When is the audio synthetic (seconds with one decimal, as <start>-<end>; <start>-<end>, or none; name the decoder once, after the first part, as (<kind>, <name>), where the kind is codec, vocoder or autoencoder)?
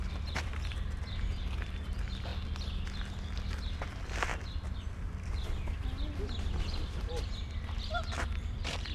0.0-2.3 (vocoder, BigVGAN v2); 3.5-8.9